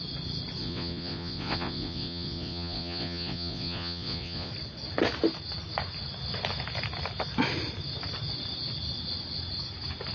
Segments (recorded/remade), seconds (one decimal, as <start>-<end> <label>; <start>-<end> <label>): 0.0-0.6 recorded; 0.6-4.5 remade; 4.5-10.1 recorded

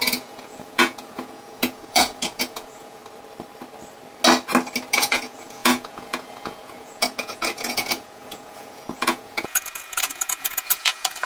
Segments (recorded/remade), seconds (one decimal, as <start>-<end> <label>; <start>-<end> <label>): 0.0-3.0 remade; 3.0-4.9 recorded; 4.9-11.3 remade

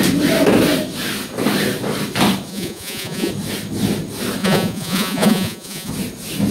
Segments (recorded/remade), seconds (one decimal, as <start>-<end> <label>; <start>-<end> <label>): 0.0-2.5 recorded; 2.5-3.3 remade; 3.3-4.4 recorded; 4.4-5.9 remade; 5.9-6.5 recorded

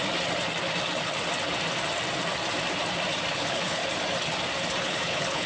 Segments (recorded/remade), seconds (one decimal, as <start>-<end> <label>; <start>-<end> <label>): 0.0-3.3 recorded; 3.3-3.8 remade; 3.8-4.8 recorded; 4.8-5.5 remade

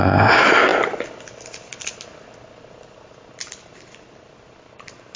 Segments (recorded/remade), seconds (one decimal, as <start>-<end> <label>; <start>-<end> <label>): 0.0-5.2 recorded

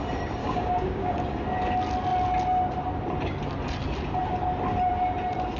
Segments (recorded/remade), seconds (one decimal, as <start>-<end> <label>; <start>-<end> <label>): 0.0-0.4 recorded; 0.4-1.1 remade; 1.1-5.6 recorded